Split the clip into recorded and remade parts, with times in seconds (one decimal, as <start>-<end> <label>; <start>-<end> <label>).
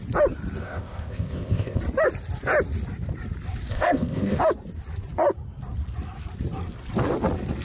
0.0-0.6 recorded; 0.6-1.8 remade; 1.8-3.7 recorded; 3.7-4.4 remade; 4.4-7.6 recorded